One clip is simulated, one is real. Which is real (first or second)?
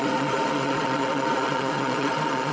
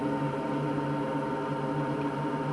second